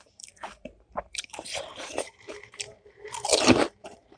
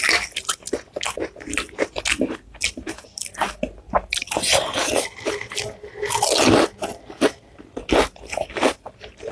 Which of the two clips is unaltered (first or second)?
second